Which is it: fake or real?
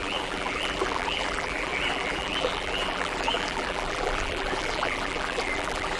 fake